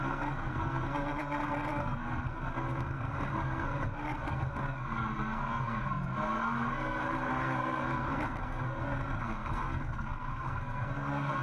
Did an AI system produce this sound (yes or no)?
yes